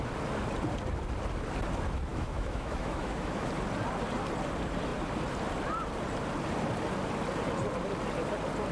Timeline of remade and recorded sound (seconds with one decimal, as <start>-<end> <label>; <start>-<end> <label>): 0.0-2.1 recorded; 2.1-3.5 remade; 3.5-8.7 recorded